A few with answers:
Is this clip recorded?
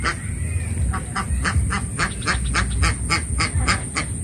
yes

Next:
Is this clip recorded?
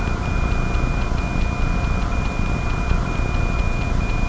yes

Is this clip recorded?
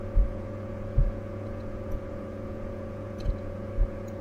no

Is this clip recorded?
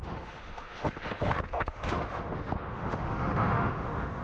no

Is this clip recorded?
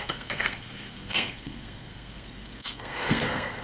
no